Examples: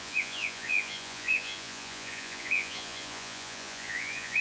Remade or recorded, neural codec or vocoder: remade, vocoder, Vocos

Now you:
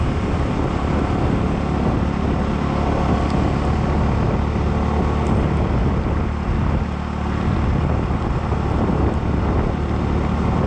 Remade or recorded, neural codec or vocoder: recorded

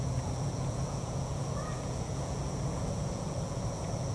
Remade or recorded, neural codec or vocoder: remade, vocoder, Vocos